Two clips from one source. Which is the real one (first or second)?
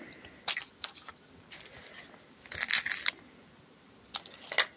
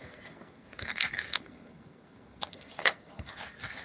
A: first